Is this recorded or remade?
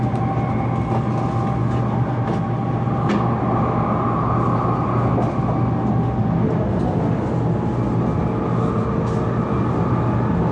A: recorded